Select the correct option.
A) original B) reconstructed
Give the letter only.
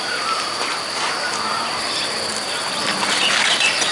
A